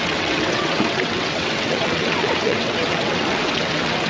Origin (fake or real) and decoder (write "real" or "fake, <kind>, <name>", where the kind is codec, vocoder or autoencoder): fake, vocoder, WaveNeXt